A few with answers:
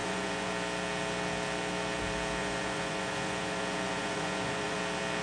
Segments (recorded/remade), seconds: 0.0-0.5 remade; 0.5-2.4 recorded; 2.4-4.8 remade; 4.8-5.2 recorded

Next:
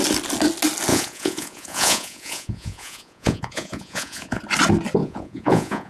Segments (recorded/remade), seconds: 0.0-0.9 recorded; 0.9-4.4 remade; 4.4-5.0 recorded; 5.0-5.9 remade

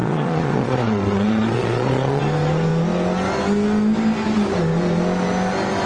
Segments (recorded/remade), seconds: 0.0-2.2 remade; 2.2-5.9 recorded

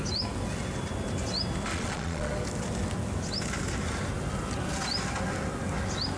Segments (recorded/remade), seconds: 0.0-1.7 recorded; 1.7-2.3 remade; 2.3-6.2 recorded

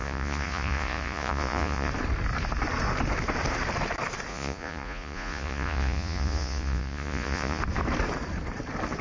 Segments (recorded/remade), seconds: 0.0-1.9 remade; 1.9-4.3 recorded; 4.3-7.6 remade; 7.6-9.0 recorded

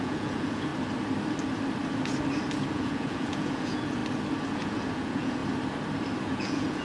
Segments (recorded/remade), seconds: 0.0-0.7 remade; 0.7-2.7 recorded; 2.7-4.0 remade; 4.0-4.5 recorded; 4.5-5.4 remade; 5.4-6.2 recorded; 6.2-6.8 remade

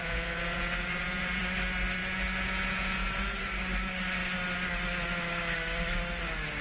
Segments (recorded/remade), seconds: 0.0-1.4 remade; 1.4-2.0 recorded; 2.0-3.2 remade; 3.2-6.6 recorded

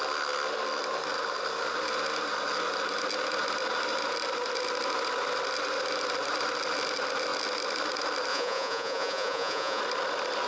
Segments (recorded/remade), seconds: 0.0-8.3 recorded; 8.3-9.8 remade; 9.8-10.5 recorded